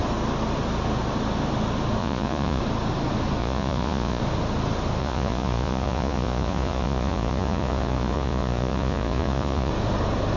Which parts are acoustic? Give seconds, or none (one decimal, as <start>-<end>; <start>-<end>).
0.0-2.0; 2.6-3.4; 4.2-5.0; 9.7-10.4